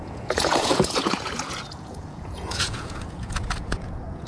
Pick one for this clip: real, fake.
fake